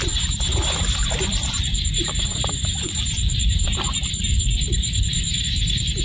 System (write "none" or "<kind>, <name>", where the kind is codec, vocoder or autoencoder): vocoder, BigVGAN v2